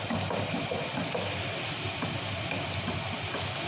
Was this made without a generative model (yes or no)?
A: yes